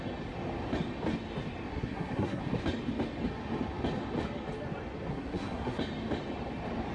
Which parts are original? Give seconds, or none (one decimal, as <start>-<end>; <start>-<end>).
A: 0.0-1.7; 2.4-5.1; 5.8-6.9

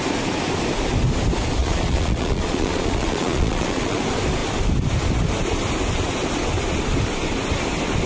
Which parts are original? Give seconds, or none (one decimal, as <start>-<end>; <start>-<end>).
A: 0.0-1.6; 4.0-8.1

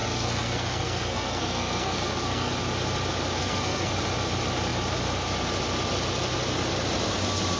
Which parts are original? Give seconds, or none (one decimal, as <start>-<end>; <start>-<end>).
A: 2.5-3.4; 3.9-7.6

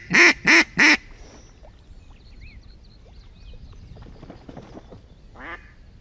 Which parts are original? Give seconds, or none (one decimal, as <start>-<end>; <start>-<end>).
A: 0.0-6.0

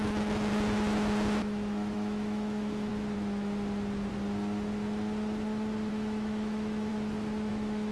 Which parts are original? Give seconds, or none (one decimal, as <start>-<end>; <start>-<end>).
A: 0.5-1.4; 2.9-5.9; 6.9-7.5

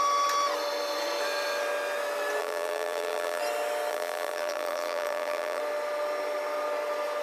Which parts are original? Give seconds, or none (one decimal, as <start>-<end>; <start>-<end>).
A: 0.0-2.4; 3.4-3.9; 5.6-7.2